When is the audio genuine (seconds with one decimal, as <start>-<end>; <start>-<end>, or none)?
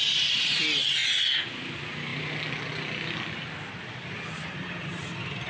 0.0-5.5